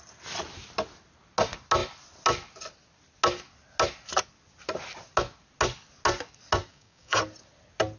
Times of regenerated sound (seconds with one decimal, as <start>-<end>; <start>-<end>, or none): 6.7-7.2